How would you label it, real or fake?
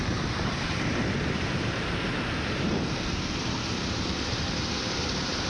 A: fake